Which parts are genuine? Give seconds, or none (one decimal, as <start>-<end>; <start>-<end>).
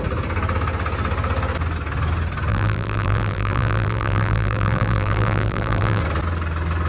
0.0-2.5; 6.0-6.9